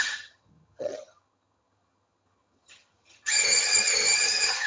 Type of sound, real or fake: fake